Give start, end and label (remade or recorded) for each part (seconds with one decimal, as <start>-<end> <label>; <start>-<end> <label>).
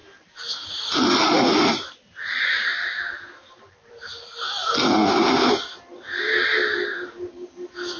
0.0-8.0 recorded